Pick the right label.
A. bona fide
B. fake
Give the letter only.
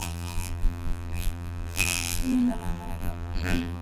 B